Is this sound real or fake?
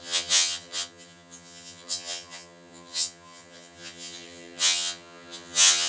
fake